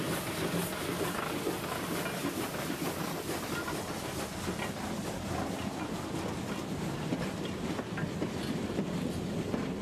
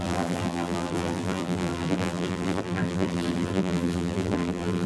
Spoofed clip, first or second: second